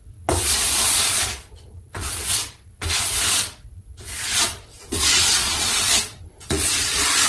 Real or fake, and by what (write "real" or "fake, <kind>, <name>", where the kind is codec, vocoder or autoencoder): fake, vocoder, Vocos